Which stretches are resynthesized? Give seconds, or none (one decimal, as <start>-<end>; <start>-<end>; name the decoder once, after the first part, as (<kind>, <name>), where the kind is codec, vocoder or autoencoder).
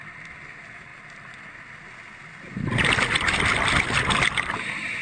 none